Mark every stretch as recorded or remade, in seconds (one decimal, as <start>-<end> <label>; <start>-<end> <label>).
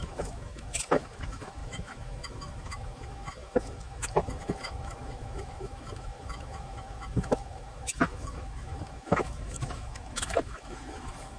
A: 0.0-11.4 remade